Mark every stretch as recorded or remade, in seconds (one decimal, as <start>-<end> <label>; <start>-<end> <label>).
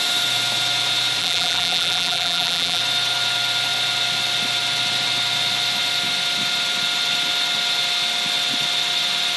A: 0.0-1.2 recorded; 1.2-2.8 remade; 2.8-9.4 recorded